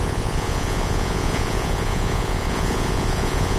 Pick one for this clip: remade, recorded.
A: remade